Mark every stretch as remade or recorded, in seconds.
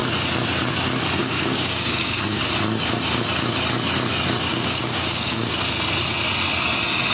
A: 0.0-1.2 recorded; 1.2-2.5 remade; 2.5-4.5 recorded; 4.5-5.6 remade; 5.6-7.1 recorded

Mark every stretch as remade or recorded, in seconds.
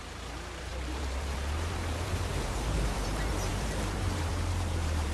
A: 0.0-5.1 remade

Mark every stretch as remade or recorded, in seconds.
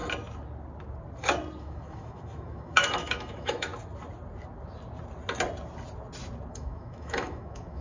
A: 0.0-1.6 recorded; 1.6-3.7 remade; 3.7-6.5 recorded; 6.5-7.8 remade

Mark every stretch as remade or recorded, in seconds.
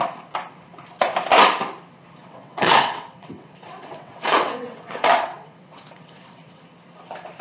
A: 0.0-2.2 recorded; 2.2-6.6 remade; 6.6-7.4 recorded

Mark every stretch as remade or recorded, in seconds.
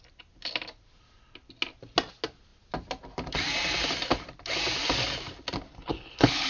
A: 0.0-5.7 recorded; 5.7-6.5 remade